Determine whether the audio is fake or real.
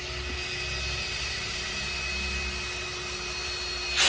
real